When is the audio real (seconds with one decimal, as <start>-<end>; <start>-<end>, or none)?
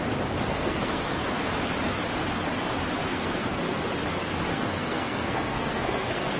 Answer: 0.0-0.5; 1.2-3.1; 3.8-4.5